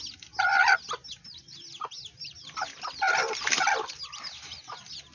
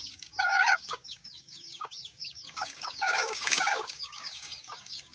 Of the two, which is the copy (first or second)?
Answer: second